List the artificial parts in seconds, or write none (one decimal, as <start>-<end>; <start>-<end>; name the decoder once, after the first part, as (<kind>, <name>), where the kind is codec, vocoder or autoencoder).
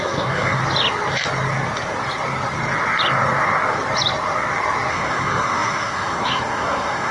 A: 0.0-0.6 (codec, SNAC); 4.9-7.1